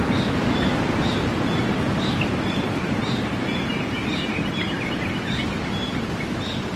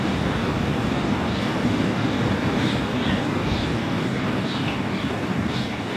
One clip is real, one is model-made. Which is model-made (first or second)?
second